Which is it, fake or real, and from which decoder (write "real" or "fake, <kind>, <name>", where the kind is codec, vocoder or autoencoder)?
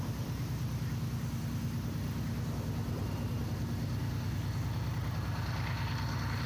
real